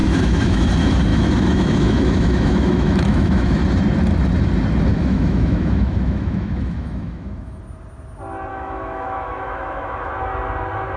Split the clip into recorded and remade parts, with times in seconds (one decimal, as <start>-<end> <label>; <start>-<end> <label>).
0.0-0.7 remade; 0.7-1.1 recorded; 1.1-3.6 remade; 3.6-4.9 recorded; 4.9-7.6 remade; 7.6-8.5 recorded; 8.5-10.1 remade; 10.1-11.0 recorded